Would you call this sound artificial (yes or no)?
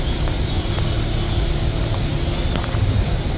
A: no